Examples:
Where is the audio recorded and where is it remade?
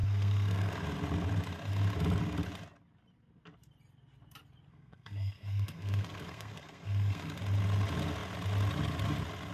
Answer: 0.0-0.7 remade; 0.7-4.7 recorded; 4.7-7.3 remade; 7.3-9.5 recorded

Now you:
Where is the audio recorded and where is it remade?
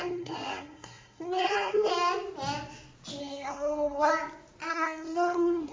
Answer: 0.0-1.9 remade; 1.9-3.2 recorded; 3.2-4.1 remade; 4.1-4.7 recorded; 4.7-5.7 remade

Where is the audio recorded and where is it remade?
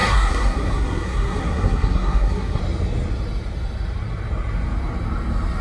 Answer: 0.0-2.6 remade; 2.6-5.6 recorded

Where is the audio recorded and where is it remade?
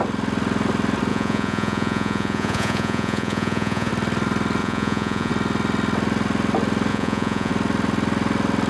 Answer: 0.0-1.1 recorded; 1.1-3.9 remade; 3.9-4.6 recorded; 4.6-5.3 remade; 5.3-6.9 recorded; 6.9-7.5 remade; 7.5-8.7 recorded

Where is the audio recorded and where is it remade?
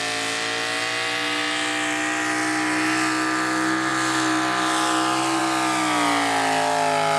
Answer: 0.0-7.2 recorded